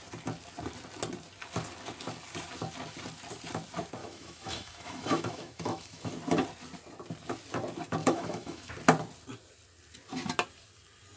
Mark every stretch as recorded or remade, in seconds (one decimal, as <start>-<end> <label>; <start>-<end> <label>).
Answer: 0.0-4.0 recorded; 4.0-6.1 remade; 6.1-8.0 recorded; 8.0-8.7 remade; 8.7-11.2 recorded

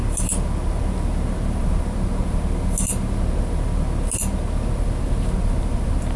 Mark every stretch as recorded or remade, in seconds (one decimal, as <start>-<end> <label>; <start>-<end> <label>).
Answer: 0.0-6.2 recorded

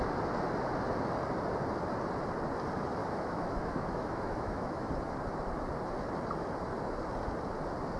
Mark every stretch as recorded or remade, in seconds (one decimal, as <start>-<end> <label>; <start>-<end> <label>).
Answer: 0.0-3.0 recorded; 3.0-4.9 remade; 4.9-8.0 recorded

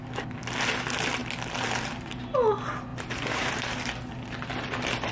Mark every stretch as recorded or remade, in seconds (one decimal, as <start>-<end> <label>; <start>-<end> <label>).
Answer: 0.0-2.9 recorded; 2.9-3.6 remade; 3.6-5.1 recorded

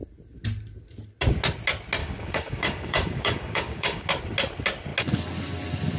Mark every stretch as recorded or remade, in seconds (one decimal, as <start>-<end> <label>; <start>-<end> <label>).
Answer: 0.0-2.0 recorded; 2.0-4.1 remade; 4.1-6.0 recorded

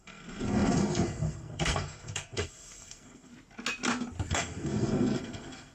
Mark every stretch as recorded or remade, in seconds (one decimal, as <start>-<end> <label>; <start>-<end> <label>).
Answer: 0.0-3.3 remade; 3.3-4.3 recorded; 4.3-5.7 remade

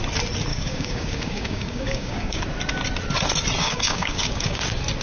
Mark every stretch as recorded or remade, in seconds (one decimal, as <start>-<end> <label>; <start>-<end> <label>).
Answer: 0.0-0.5 recorded; 0.5-2.4 remade; 2.4-3.6 recorded; 3.6-4.6 remade; 4.6-5.0 recorded